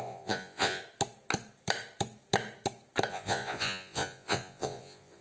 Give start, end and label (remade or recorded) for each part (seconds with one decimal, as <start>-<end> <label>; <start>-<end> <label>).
0.0-0.8 remade; 0.8-3.1 recorded; 3.1-5.2 remade